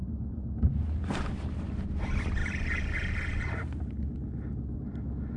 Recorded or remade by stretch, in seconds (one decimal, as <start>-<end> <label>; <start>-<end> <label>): 0.0-5.4 recorded